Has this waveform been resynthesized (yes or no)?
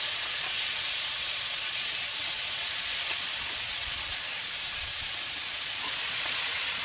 yes